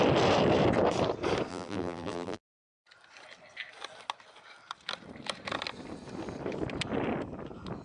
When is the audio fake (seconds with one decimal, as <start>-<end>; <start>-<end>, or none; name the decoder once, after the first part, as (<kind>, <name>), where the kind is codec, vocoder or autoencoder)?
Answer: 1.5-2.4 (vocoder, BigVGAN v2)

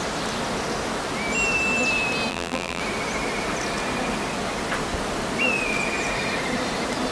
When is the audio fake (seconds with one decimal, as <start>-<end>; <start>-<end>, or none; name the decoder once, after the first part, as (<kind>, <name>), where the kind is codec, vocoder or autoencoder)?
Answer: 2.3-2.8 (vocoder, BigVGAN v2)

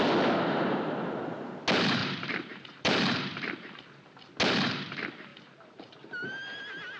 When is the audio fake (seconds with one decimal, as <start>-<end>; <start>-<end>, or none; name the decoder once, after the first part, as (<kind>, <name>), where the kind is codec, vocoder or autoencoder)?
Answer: 2.0-3.8 (vocoder, BigVGAN v2); 5.3-6.6